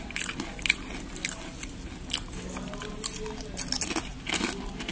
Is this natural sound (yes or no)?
yes